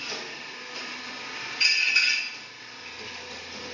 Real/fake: real